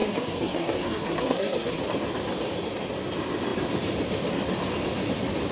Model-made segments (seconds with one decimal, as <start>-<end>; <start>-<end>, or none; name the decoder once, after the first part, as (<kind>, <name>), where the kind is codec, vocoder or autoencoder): 0.0-1.8 (codec, SNAC)